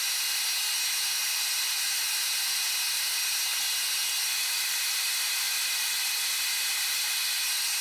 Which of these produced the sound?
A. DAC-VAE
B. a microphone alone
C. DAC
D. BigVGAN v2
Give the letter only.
B